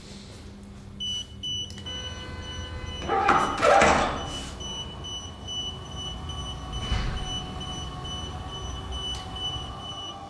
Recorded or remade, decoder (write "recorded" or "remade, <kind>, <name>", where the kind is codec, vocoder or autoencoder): recorded